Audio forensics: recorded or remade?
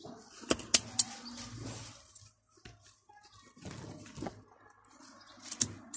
recorded